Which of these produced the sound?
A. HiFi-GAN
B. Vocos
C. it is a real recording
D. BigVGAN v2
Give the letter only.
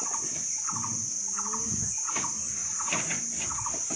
C